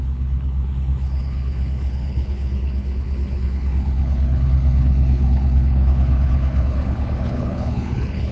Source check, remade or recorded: remade